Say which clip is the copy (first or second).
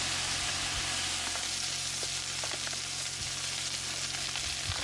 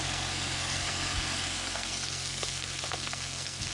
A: second